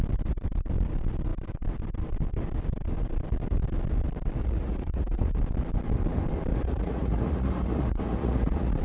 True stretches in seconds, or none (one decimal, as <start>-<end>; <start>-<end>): 0.0-4.4; 5.4-6.5